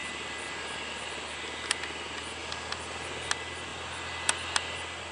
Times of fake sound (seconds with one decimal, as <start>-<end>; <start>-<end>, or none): none